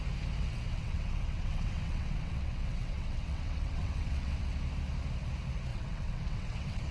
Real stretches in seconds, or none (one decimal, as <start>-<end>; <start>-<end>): 0.0-0.4; 4.5-5.7